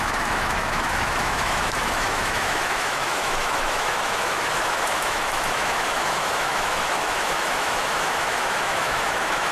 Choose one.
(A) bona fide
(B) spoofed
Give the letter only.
B